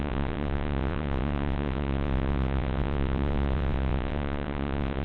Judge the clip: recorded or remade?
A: remade